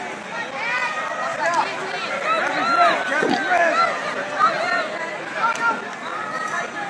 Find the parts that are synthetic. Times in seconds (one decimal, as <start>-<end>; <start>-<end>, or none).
none